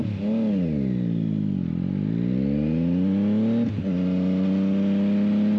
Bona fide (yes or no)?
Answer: yes